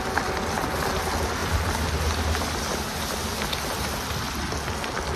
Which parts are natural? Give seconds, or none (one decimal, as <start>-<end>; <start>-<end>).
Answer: 0.0-5.2